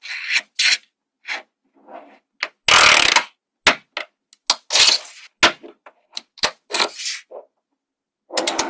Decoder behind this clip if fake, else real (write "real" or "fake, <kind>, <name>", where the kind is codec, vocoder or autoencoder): real